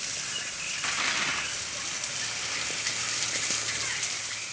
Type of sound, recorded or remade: remade